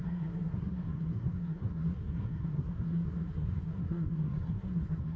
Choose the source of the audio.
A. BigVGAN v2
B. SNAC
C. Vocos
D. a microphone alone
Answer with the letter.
B